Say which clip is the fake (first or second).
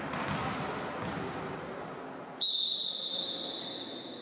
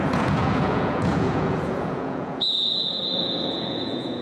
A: second